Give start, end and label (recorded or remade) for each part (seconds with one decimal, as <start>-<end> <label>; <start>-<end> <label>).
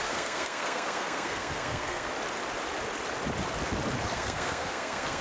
0.0-2.1 remade; 2.1-4.1 recorded; 4.1-5.2 remade